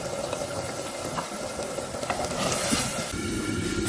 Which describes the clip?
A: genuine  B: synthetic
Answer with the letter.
A